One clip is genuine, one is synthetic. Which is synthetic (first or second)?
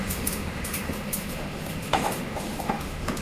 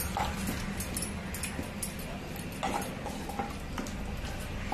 first